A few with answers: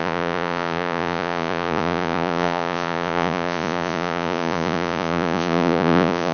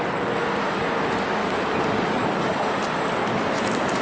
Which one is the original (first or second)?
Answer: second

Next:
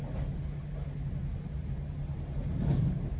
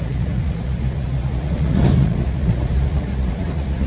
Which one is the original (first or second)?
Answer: first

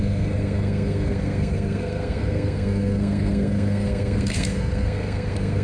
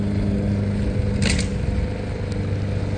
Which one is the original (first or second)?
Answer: second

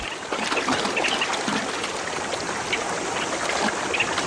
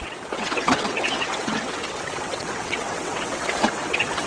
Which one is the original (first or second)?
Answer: first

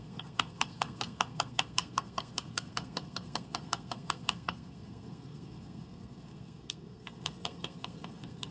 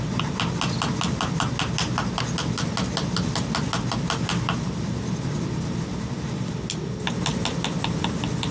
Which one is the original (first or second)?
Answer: second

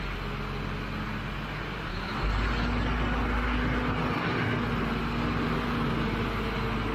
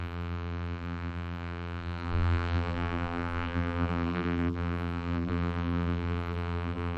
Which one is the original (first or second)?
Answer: first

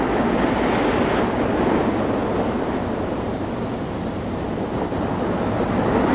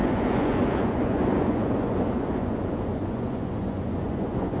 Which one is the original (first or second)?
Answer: first